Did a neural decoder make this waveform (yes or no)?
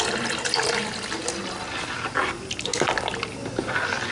no